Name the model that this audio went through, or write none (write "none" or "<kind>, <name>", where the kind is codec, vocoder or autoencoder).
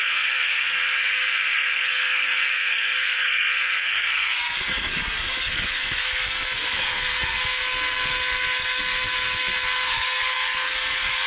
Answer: codec, SNAC